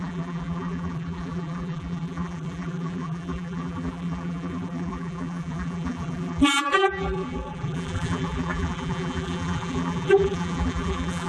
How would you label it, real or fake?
fake